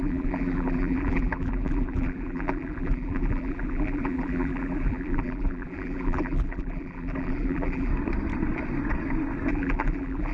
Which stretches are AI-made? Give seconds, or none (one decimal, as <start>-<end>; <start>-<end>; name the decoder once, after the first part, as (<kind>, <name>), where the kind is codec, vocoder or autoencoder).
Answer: 0.0-7.9 (vocoder, BigVGAN v2); 9.5-10.3